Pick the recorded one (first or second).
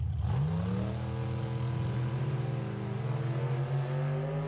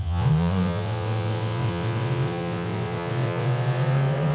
first